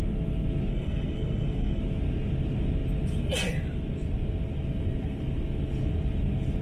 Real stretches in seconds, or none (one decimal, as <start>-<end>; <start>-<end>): 0.0-0.7; 1.8-6.6